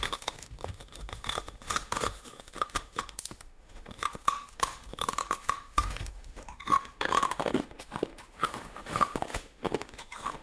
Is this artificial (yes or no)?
yes